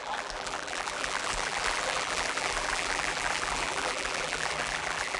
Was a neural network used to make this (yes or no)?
yes